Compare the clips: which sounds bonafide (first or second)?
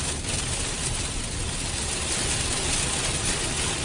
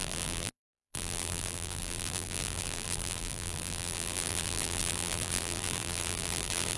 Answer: first